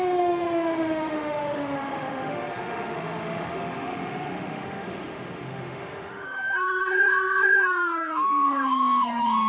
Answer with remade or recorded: remade